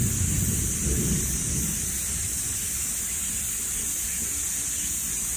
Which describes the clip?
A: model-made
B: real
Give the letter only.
B